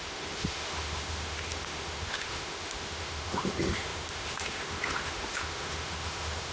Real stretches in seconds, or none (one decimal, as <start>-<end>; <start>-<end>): none